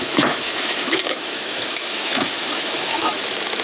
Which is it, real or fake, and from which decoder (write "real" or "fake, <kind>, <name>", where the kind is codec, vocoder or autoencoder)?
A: fake, autoencoder, DAC-VAE